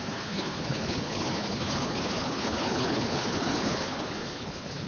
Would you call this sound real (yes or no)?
no